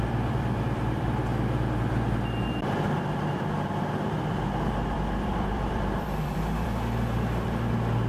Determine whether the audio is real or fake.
fake